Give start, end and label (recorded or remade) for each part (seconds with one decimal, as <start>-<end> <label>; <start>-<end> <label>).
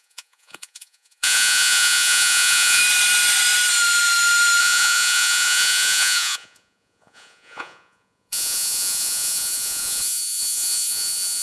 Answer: 0.0-2.8 remade; 2.8-4.6 recorded; 4.6-11.4 remade